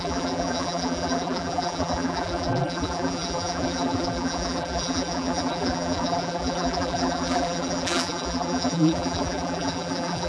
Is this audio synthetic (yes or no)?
yes